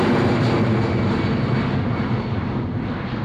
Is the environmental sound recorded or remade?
recorded